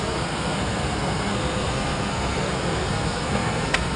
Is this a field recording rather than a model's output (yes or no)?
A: no